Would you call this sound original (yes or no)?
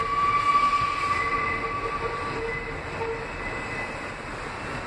yes